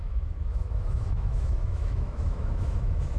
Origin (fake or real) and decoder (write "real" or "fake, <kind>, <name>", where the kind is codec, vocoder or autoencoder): fake, autoencoder, DAC-VAE